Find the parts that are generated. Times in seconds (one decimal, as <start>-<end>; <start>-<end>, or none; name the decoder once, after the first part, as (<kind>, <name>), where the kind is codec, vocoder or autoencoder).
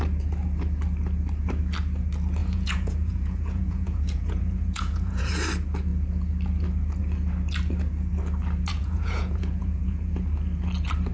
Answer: 2.4-5.3 (vocoder, Vocos); 8.7-10.1